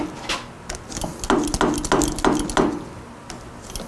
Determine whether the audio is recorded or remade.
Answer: recorded